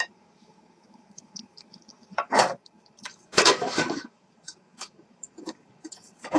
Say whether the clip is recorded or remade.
remade